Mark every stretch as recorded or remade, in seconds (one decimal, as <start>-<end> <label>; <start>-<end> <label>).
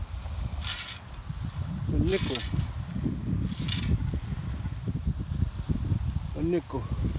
0.0-7.2 recorded